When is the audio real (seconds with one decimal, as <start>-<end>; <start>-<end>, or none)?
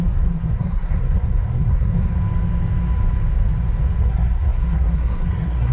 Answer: 2.1-4.0